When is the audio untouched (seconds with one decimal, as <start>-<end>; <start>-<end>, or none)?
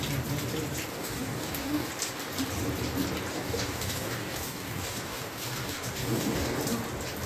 0.0-0.9; 1.9-3.3; 6.6-7.3